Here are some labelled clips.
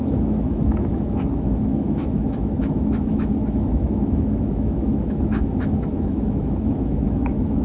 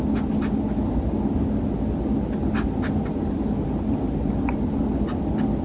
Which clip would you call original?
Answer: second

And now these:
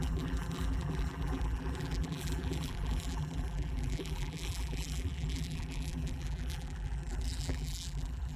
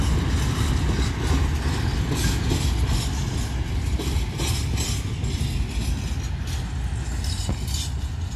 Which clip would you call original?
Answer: second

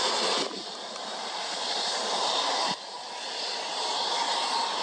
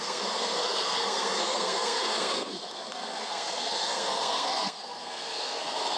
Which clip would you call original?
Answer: first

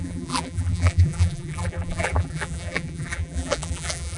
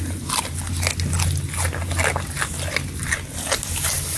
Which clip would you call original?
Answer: second